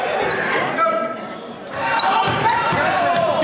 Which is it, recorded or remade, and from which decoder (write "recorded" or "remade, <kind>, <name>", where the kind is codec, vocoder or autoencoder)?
remade, vocoder, BigVGAN v2